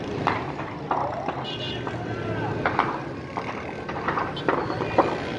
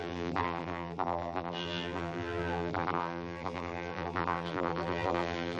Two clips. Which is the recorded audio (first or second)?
first